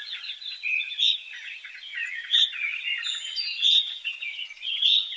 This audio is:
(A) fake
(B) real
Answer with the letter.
A